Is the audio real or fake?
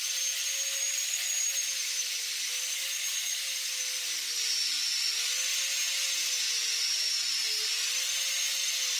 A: real